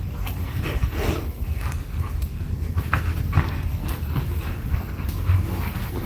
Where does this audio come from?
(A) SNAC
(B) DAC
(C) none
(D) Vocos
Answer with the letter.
A